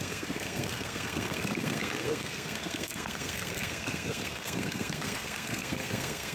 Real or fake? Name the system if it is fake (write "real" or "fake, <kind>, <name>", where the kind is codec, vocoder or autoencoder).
fake, codec, SNAC